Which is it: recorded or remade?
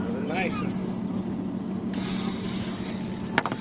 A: recorded